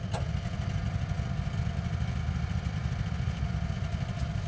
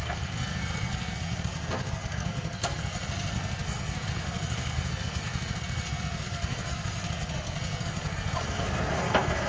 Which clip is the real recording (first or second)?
first